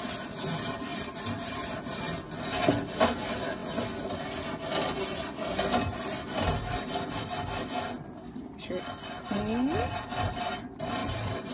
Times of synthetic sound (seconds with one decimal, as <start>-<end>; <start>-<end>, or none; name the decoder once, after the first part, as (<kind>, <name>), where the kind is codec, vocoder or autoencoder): 0.9-2.0 (vocoder, BigVGAN v2); 11.0-11.5